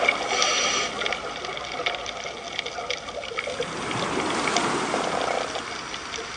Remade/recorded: recorded